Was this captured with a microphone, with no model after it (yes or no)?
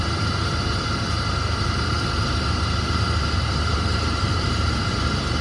no